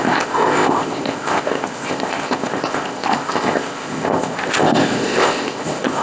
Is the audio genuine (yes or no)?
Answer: no